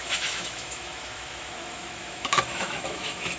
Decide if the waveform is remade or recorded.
remade